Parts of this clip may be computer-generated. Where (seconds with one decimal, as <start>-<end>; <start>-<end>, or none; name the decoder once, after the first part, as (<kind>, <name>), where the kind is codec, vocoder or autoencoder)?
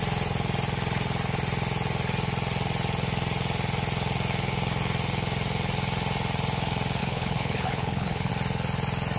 7.0-8.3 (codec, HILCodec)